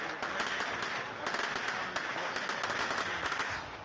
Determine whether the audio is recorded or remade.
recorded